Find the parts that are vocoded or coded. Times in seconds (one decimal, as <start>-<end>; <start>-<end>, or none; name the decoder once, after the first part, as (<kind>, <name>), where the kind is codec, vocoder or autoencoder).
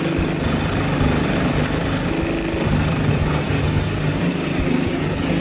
none